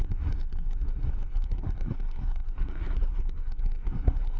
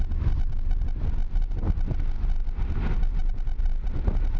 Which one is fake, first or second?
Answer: first